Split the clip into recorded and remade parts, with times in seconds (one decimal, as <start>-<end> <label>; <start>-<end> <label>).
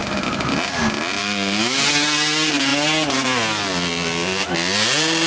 0.0-1.2 recorded; 1.2-1.8 remade; 1.8-5.3 recorded